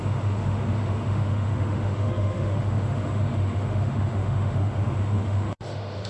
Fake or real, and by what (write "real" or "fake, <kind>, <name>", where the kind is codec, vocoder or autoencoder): fake, autoencoder, DAC-VAE